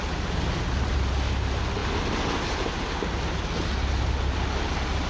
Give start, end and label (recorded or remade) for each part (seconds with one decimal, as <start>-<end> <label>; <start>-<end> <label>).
0.0-5.1 recorded